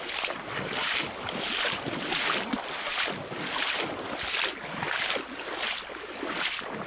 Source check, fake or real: real